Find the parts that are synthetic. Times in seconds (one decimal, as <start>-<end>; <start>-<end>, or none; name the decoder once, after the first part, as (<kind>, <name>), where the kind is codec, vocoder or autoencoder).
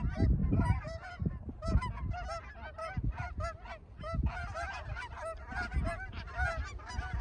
0.4-2.4 (vocoder, BigVGAN v2); 4.4-5.4